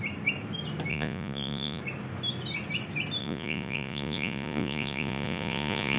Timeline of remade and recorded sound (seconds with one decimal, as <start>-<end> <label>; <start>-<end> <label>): 0.0-0.9 recorded; 0.9-1.8 remade; 1.8-3.2 recorded; 3.2-6.0 remade